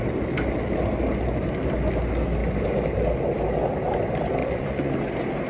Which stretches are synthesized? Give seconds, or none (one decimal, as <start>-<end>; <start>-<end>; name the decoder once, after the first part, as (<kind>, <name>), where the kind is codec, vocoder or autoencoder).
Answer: 4.4-4.9 (vocoder, Vocos)